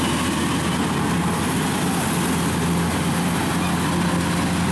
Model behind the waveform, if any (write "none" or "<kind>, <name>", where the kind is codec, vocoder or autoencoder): none